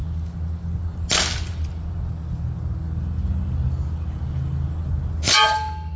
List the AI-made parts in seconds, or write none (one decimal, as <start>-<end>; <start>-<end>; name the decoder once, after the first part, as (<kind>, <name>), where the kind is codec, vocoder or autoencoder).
none